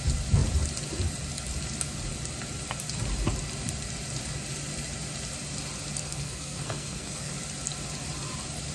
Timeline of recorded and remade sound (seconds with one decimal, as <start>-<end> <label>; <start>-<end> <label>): 0.0-6.0 recorded; 6.0-7.3 remade; 7.3-8.7 recorded